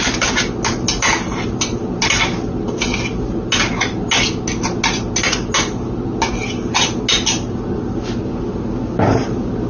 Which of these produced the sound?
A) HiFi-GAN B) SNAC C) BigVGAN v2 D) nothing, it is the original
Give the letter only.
D